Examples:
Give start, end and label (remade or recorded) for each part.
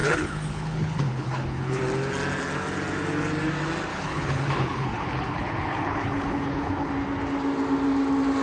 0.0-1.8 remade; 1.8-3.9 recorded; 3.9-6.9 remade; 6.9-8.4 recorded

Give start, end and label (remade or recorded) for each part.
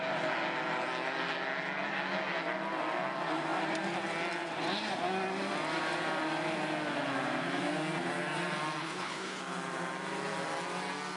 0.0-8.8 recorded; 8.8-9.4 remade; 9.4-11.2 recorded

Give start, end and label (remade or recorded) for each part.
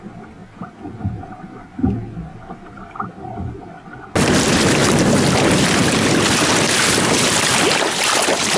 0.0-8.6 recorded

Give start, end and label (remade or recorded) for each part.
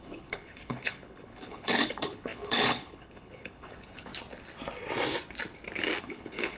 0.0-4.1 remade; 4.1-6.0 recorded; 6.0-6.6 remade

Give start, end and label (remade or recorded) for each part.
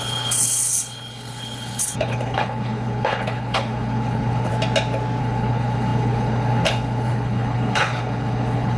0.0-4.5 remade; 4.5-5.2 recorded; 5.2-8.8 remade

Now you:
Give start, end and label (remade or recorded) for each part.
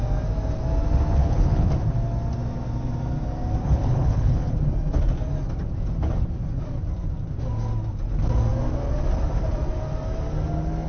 0.0-1.2 recorded; 1.2-1.7 remade; 1.7-3.6 recorded; 3.6-4.5 remade; 4.5-10.9 recorded